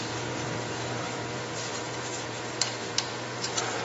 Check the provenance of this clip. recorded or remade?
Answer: remade